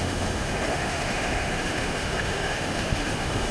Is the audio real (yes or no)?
no